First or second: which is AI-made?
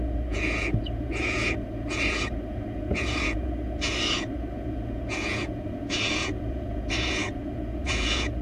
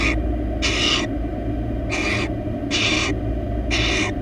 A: first